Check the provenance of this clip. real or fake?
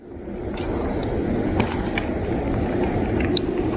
real